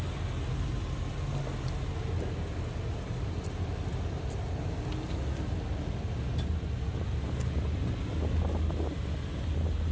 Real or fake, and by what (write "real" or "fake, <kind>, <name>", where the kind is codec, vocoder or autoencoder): real